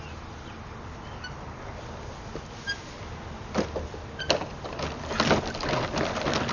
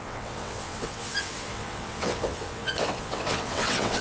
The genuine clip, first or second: first